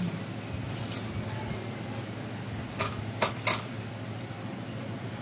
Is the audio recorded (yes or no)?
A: yes